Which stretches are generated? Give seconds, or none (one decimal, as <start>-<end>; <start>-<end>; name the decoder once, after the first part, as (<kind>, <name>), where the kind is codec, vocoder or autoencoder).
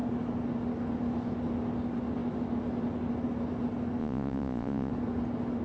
4.0-4.9 (vocoder, Vocos)